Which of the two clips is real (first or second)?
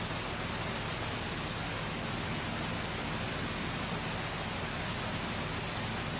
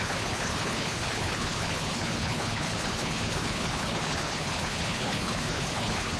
first